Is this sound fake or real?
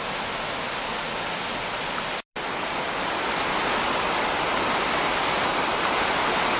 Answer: real